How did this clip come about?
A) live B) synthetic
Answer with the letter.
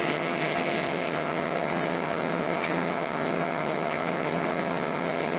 B